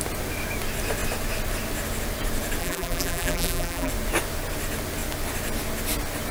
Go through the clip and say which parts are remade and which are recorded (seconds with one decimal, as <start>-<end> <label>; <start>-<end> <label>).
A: 0.0-2.6 recorded; 2.6-3.9 remade; 3.9-6.3 recorded